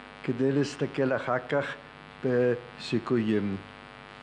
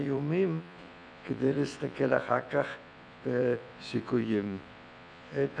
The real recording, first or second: first